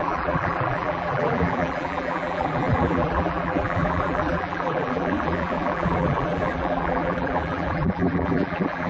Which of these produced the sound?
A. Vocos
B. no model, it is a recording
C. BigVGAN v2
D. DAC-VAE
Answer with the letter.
C